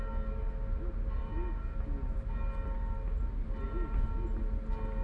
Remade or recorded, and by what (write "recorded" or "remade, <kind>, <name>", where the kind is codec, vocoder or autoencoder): recorded